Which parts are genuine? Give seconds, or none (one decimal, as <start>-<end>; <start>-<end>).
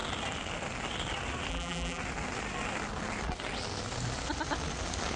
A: 0.0-1.5; 2.0-5.2